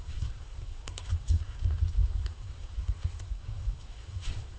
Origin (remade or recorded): remade